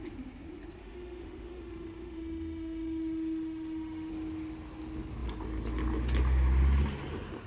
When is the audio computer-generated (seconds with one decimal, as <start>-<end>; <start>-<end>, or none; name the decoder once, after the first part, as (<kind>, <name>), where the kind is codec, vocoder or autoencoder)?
0.8-4.1 (autoencoder, DAC-VAE)